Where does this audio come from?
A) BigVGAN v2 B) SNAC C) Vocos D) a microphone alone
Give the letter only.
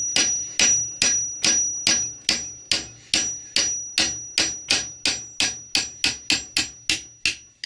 D